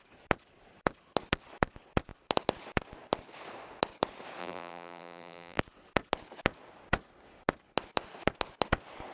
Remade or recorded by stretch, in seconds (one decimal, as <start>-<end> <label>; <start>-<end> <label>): 0.0-4.4 recorded; 4.4-5.6 remade; 5.6-9.1 recorded